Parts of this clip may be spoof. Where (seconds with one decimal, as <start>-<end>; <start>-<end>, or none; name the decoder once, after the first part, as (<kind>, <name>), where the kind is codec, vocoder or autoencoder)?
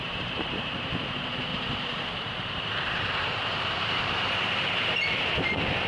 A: 0.0-1.5 (vocoder, BigVGAN v2); 2.2-5.9